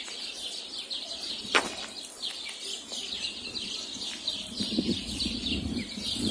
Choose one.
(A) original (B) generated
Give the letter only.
B